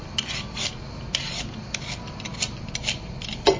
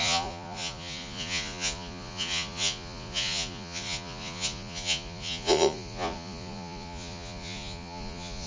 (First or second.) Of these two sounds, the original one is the first